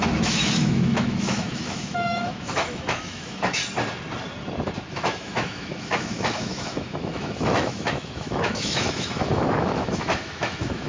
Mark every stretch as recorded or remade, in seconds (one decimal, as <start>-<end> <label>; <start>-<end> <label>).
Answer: 0.0-3.6 remade; 3.6-4.9 recorded; 4.9-10.9 remade

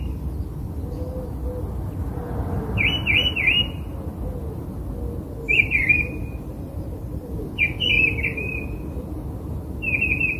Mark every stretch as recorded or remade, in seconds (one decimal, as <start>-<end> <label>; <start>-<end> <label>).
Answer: 0.0-10.4 recorded

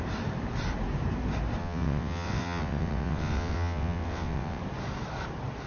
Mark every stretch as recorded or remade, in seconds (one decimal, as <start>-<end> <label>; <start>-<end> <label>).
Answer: 0.0-1.6 recorded; 1.6-4.6 remade; 4.6-5.7 recorded